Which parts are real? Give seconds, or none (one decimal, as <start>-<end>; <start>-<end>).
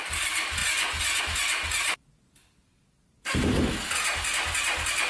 0.0-5.1